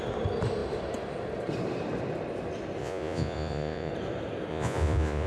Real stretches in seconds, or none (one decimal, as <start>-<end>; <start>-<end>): 0.0-2.8; 3.9-4.5